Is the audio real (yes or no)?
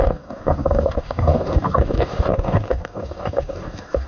no